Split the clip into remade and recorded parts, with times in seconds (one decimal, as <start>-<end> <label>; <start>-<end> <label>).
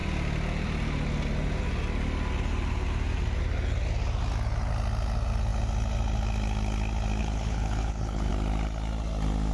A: 0.0-7.2 recorded; 7.2-8.3 remade; 8.3-9.5 recorded